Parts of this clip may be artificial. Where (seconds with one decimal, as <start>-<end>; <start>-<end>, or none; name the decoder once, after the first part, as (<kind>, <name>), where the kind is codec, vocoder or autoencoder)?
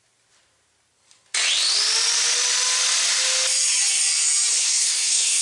4.5-5.4 (codec, SNAC)